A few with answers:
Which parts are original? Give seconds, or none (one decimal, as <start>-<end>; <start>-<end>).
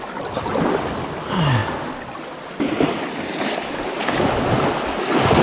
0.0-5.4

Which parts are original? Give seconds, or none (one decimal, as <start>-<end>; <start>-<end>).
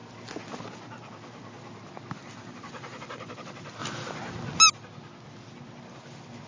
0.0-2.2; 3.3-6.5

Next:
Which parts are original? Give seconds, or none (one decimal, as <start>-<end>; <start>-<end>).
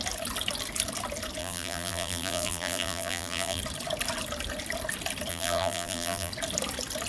0.0-1.4; 3.6-5.3; 6.3-7.1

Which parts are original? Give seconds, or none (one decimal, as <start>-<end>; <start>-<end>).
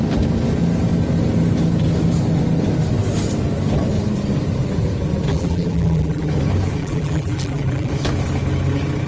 0.0-5.3; 6.3-6.8; 7.9-9.1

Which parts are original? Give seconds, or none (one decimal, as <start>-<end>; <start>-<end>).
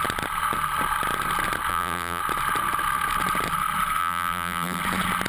0.0-1.7; 2.2-4.0; 4.8-5.3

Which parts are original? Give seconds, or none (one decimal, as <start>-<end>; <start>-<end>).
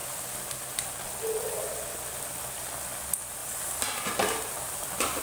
0.0-3.4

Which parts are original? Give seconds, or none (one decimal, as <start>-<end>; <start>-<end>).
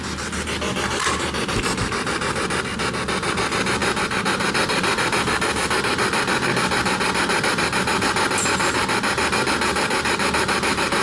0.0-11.0